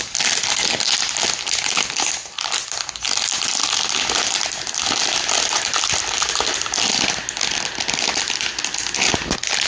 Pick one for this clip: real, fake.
real